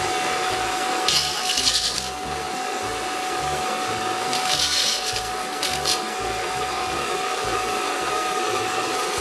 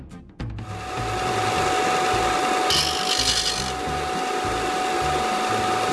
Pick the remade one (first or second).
first